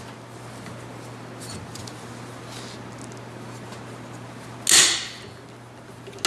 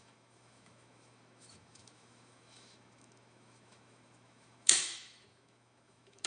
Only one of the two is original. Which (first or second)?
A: first